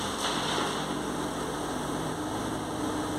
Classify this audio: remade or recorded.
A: recorded